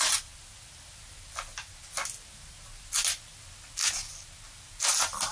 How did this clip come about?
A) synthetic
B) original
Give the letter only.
B